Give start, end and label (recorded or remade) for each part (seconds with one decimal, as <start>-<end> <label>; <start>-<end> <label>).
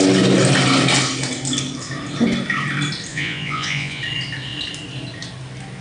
0.0-3.1 recorded; 3.1-4.0 remade; 4.0-5.8 recorded